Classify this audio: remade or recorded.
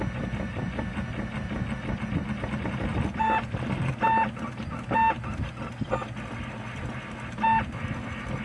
recorded